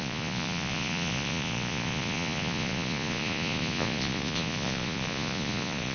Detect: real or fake fake